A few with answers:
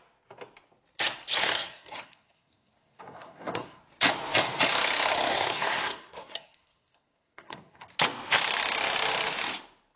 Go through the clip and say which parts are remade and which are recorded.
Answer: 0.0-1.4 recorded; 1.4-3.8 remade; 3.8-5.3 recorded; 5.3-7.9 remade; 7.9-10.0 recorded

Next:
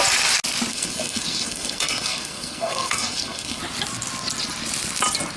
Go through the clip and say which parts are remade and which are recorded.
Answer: 0.0-0.7 recorded; 0.7-3.6 remade; 3.6-5.4 recorded

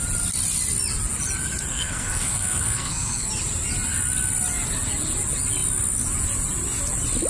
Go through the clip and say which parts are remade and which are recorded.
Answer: 0.0-1.7 recorded; 1.7-3.3 remade; 3.3-7.3 recorded

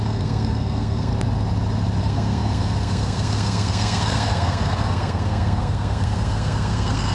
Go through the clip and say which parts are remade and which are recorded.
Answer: 0.0-1.1 remade; 1.1-2.0 recorded; 2.0-7.1 remade